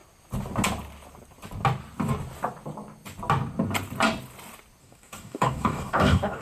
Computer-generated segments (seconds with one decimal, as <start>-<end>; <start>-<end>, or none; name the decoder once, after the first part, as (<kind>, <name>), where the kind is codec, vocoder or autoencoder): 4.8-6.4 (codec, DAC)